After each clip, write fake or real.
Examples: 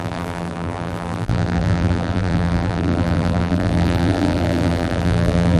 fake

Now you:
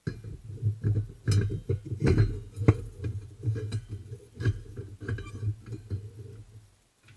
real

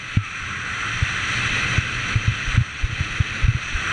real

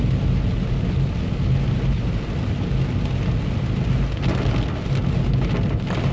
real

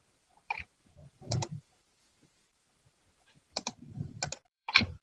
fake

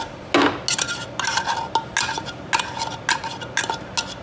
real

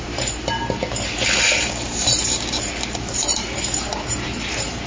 fake